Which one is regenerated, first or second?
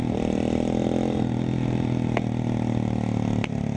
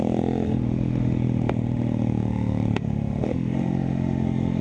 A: second